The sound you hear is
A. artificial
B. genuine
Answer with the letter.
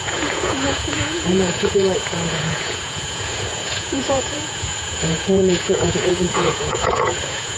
A